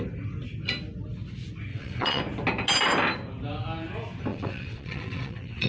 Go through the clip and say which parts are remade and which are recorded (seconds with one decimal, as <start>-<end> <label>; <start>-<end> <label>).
0.0-1.7 recorded; 1.7-2.2 remade; 2.2-4.3 recorded; 4.3-5.7 remade